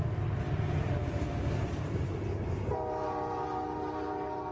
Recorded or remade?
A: recorded